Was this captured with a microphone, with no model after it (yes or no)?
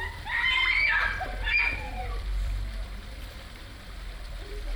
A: no